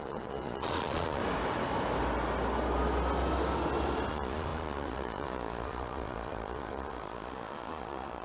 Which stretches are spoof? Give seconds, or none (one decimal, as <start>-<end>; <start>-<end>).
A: 0.0-1.2; 4.1-8.2